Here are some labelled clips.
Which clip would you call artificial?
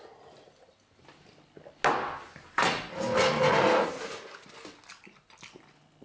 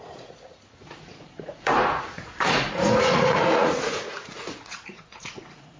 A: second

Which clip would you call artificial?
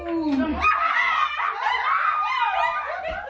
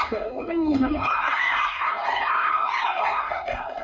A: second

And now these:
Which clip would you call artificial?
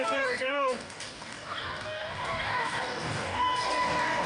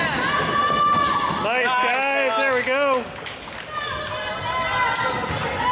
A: first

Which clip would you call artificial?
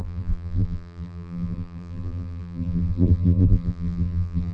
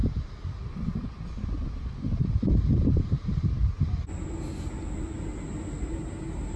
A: first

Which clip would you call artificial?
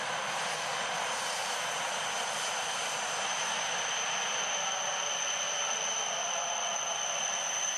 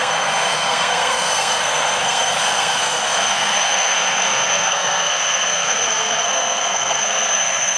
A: second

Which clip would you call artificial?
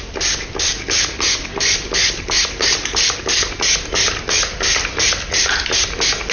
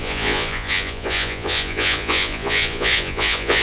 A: second